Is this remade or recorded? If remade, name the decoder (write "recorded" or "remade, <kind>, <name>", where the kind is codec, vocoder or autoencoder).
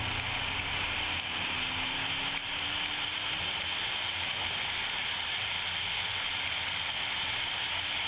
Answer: recorded